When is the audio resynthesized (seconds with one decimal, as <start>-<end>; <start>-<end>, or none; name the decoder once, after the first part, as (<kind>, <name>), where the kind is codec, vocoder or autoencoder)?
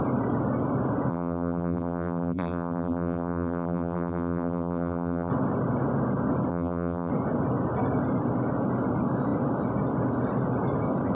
1.1-5.3 (vocoder, BigVGAN v2); 6.5-7.1